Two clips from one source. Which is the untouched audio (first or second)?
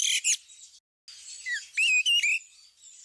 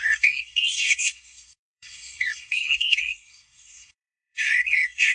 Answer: first